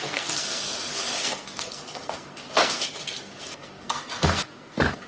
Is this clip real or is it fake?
fake